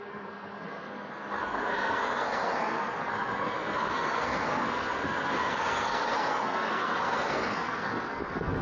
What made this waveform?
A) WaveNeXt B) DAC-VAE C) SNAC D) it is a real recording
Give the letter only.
C